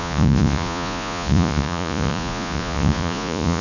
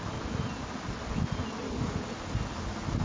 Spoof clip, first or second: first